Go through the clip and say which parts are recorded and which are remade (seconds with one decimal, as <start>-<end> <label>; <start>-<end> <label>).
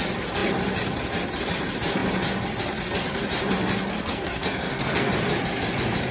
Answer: 0.0-3.9 recorded; 3.9-5.1 remade; 5.1-6.1 recorded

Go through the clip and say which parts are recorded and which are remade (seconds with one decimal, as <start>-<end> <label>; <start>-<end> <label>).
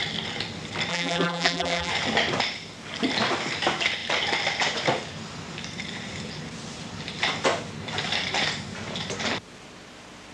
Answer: 0.0-0.9 recorded; 0.9-1.9 remade; 1.9-10.3 recorded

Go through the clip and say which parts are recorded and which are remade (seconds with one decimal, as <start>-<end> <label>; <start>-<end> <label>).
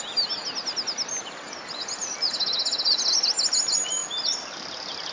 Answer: 0.0-5.1 recorded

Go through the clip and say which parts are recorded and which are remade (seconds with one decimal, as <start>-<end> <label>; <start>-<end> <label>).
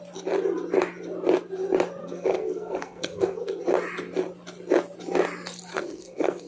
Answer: 0.0-2.0 recorded; 2.0-3.6 remade; 3.6-5.7 recorded; 5.7-6.5 remade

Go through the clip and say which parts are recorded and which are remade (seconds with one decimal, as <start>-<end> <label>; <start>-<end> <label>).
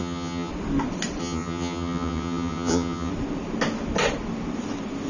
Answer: 0.0-0.5 remade; 0.5-1.2 recorded; 1.2-3.1 remade; 3.1-5.1 recorded